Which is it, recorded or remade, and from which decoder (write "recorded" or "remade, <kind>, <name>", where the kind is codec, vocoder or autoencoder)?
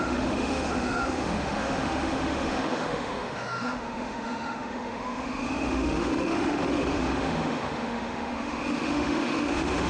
remade, autoencoder, DAC-VAE